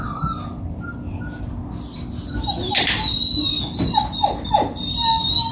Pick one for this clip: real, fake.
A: real